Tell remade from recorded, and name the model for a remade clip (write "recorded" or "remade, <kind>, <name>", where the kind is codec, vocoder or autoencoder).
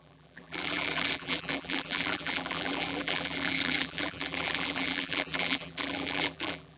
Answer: remade, vocoder, BigVGAN v2